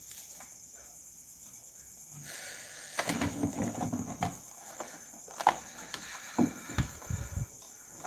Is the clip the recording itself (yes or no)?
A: no